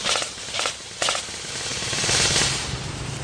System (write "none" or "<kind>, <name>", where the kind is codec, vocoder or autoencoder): vocoder, BigVGAN v2